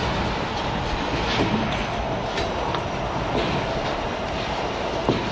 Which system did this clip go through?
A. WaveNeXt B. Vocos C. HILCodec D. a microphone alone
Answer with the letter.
D